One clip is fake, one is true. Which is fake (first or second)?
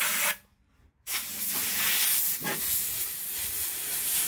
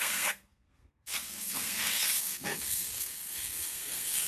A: second